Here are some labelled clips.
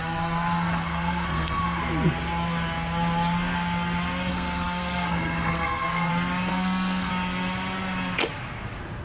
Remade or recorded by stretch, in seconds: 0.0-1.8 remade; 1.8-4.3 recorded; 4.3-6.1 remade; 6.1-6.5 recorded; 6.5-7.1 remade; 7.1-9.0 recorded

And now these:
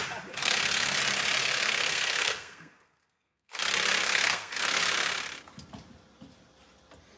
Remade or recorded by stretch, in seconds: 0.0-0.4 recorded; 0.4-1.0 remade; 1.0-1.4 recorded; 1.4-3.6 remade; 3.6-4.0 recorded; 4.0-5.2 remade; 5.2-7.2 recorded

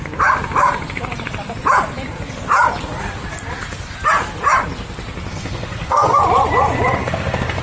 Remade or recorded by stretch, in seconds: 0.0-5.3 recorded; 5.3-6.2 remade; 6.2-7.0 recorded; 7.0-7.6 remade

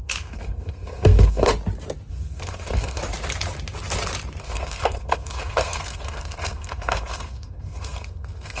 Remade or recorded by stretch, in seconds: 0.0-1.5 remade; 1.5-2.1 recorded; 2.1-3.0 remade; 3.0-4.4 recorded; 4.4-8.6 remade

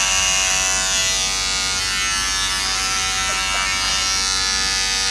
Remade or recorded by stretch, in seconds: 0.0-5.1 recorded

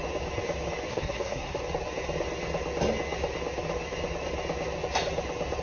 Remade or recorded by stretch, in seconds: 0.0-0.9 recorded; 0.9-1.6 remade; 1.6-5.6 recorded

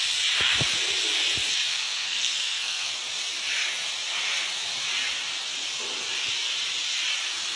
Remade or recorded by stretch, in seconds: 0.0-1.7 recorded; 1.7-2.9 remade; 2.9-7.6 recorded